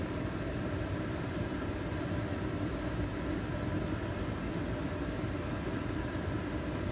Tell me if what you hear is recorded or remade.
recorded